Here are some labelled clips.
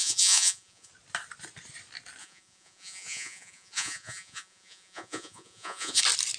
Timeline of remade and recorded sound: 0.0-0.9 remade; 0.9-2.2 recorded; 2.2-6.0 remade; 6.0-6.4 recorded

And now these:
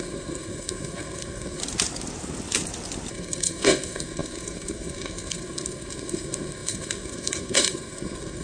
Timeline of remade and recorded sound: 0.0-1.6 remade; 1.6-3.1 recorded; 3.1-8.4 remade

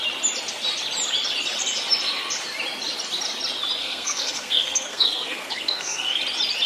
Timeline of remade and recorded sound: 0.0-3.8 recorded; 3.8-6.2 remade; 6.2-6.7 recorded

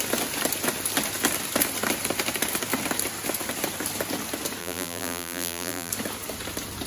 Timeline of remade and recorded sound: 0.0-4.6 recorded; 4.6-5.9 remade; 5.9-6.9 recorded

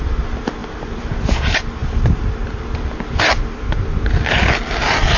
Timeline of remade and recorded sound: 0.0-5.2 recorded

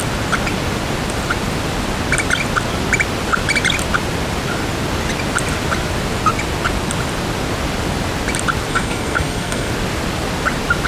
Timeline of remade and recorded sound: 0.0-8.7 recorded; 8.7-9.7 remade; 9.7-10.9 recorded

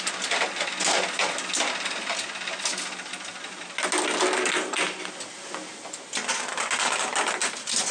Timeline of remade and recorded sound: 0.0-7.9 recorded